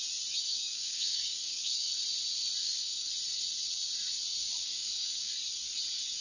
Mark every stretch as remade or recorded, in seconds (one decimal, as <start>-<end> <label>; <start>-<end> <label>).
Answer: 0.0-0.5 recorded; 0.5-1.9 remade; 1.9-2.6 recorded; 2.6-3.1 remade; 3.1-4.4 recorded; 4.4-5.3 remade; 5.3-6.2 recorded